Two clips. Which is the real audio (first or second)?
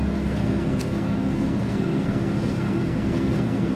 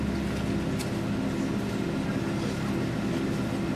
second